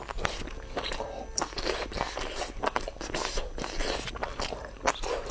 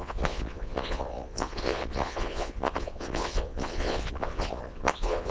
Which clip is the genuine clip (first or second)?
first